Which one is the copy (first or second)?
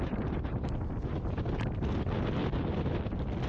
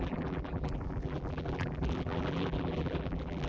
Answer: second